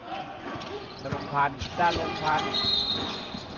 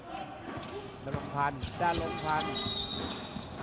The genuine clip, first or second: second